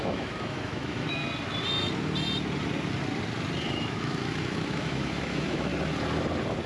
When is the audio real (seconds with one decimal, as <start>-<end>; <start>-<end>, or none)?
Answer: 1.2-3.6; 5.7-6.7